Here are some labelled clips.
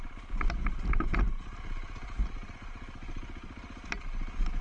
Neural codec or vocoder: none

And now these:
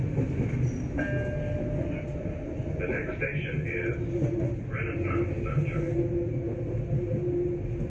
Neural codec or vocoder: none